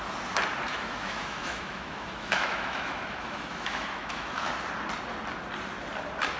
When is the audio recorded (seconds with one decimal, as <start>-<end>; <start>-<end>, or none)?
0.0-0.7; 4.5-6.4